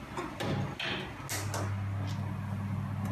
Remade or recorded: recorded